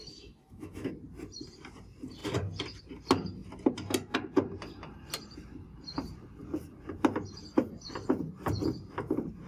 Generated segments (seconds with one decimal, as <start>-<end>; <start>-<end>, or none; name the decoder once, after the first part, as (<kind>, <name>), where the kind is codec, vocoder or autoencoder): 0.0-0.9 (autoencoder, DAC-VAE)